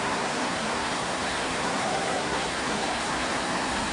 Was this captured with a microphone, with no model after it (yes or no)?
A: no